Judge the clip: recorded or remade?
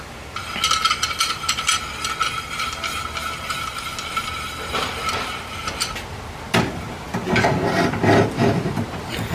recorded